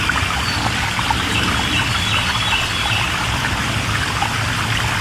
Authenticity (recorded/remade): recorded